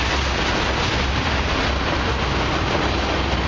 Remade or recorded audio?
recorded